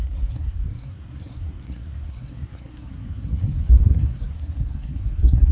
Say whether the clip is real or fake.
fake